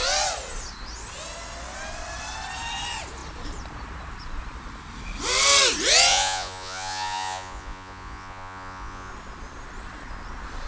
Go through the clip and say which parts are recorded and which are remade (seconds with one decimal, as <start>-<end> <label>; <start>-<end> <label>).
0.0-6.1 recorded; 6.1-9.1 remade; 9.1-10.7 recorded